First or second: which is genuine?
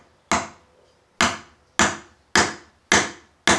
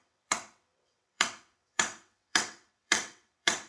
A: first